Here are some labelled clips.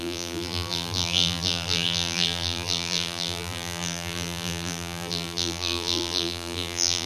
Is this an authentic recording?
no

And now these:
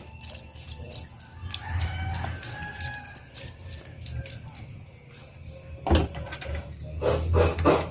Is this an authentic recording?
yes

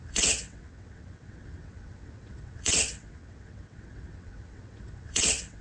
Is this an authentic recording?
no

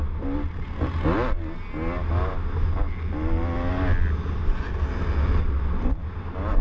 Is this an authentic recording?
yes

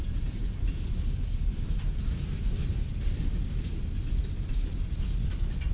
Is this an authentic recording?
yes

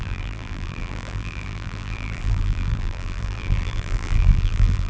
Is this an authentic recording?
no